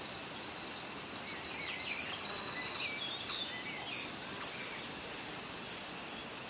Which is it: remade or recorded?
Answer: recorded